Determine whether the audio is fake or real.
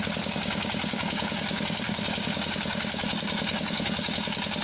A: fake